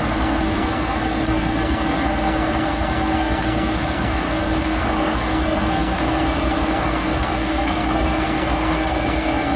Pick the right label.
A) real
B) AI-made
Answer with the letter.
B